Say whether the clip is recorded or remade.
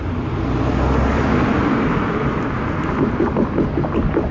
recorded